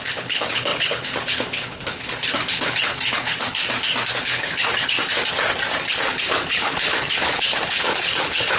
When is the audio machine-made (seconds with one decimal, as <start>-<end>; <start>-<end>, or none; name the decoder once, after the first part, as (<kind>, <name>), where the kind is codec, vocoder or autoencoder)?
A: 0.0-3.6 (codec, HILCodec); 4.1-5.0; 5.9-8.6